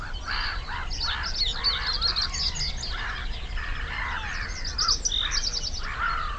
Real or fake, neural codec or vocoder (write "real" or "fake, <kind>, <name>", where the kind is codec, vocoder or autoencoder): real